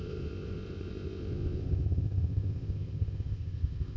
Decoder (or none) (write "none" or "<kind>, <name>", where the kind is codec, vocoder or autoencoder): codec, ZipCodec